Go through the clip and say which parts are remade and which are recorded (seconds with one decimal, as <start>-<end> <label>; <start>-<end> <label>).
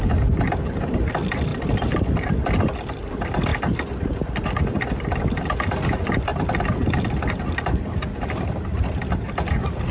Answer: 0.0-9.9 recorded